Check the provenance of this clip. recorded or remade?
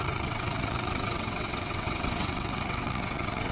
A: remade